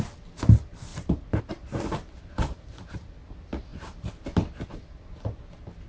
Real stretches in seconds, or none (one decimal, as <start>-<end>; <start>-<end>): 0.0-5.9